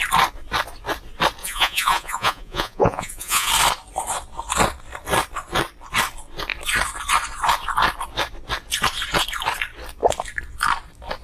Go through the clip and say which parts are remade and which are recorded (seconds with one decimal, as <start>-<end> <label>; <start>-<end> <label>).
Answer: 0.0-1.4 recorded; 1.4-3.5 remade; 3.5-11.2 recorded